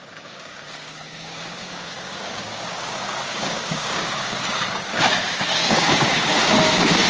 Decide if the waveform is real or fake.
fake